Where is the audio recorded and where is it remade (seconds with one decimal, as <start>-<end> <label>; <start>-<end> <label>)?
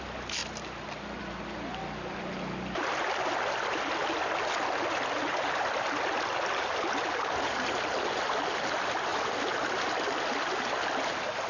0.0-11.5 recorded